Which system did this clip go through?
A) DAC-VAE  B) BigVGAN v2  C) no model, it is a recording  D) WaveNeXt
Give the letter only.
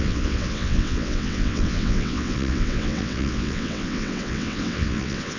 D